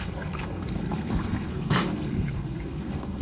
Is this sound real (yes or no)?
no